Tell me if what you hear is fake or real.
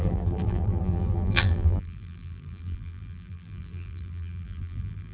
fake